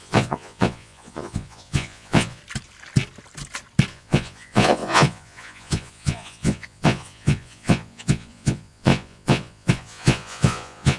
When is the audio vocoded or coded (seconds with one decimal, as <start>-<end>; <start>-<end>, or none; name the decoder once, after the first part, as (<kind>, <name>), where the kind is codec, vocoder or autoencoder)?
0.0-2.4 (vocoder, Vocos); 3.9-11.0